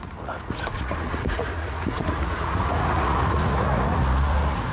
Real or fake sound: fake